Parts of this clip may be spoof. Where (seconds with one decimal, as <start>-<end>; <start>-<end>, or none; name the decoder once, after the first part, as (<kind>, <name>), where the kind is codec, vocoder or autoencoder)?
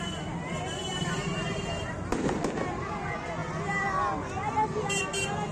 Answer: 0.9-2.4 (vocoder, BigVGAN v2)